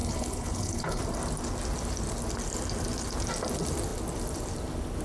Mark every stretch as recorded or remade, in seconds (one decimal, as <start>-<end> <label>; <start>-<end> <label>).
0.0-1.0 remade; 1.0-5.0 recorded